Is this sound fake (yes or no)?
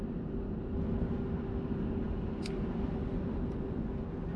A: no